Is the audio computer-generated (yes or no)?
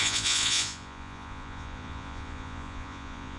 yes